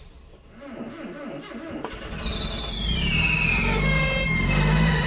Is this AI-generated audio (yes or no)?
no